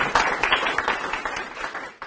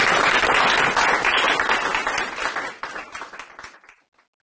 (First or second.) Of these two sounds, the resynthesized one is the first